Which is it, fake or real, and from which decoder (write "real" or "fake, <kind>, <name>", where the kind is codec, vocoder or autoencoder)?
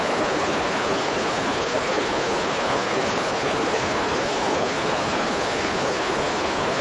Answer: fake, codec, HILCodec